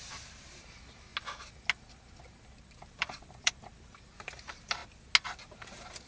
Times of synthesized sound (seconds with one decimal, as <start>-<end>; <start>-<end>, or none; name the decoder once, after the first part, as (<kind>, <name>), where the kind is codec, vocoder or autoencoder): 0.0-1.1 (vocoder, BigVGAN v2); 2.8-4.8